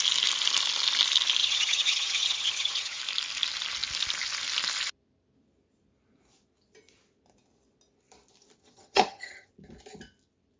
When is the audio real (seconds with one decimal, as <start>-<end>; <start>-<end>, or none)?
0.0-1.4; 3.0-8.6; 9.5-10.6